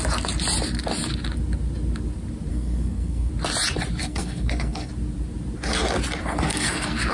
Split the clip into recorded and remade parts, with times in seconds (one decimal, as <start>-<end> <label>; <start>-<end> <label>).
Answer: 0.0-2.5 recorded; 2.5-3.3 remade; 3.3-4.0 recorded; 4.0-4.9 remade; 4.9-6.2 recorded; 6.2-7.1 remade